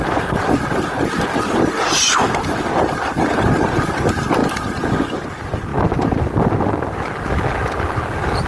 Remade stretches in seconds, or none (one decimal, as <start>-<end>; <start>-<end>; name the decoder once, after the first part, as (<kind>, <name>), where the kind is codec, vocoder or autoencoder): none